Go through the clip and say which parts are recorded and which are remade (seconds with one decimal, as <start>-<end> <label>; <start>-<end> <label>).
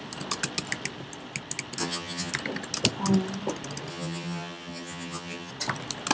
0.0-1.8 recorded; 1.8-2.3 remade; 2.3-3.9 recorded; 3.9-5.5 remade; 5.5-6.1 recorded